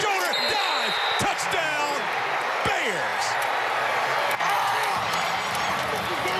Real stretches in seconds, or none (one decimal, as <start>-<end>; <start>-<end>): 0.0-6.4